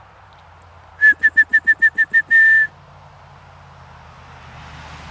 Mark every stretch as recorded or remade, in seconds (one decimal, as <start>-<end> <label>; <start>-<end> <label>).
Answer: 0.0-5.1 recorded